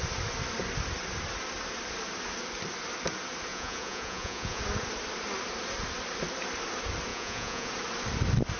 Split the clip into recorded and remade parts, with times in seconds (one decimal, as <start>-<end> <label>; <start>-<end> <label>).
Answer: 0.0-3.5 recorded; 3.5-4.6 remade; 4.6-7.1 recorded; 7.1-7.7 remade; 7.7-8.6 recorded